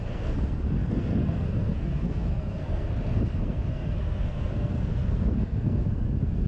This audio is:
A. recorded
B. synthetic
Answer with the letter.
B